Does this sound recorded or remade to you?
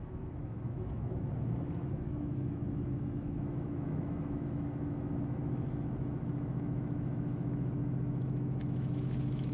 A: remade